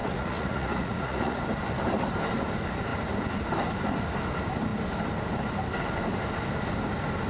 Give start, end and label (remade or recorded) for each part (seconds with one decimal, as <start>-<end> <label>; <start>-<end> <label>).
0.0-1.4 remade; 1.4-7.3 recorded